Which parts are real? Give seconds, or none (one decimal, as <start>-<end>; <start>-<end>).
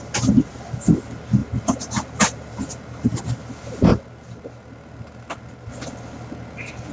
0.0-1.4; 3.2-6.9